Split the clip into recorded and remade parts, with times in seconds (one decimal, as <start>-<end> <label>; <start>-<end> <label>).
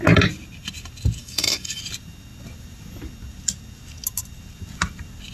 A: 0.0-1.2 recorded; 1.2-1.8 remade; 1.8-5.3 recorded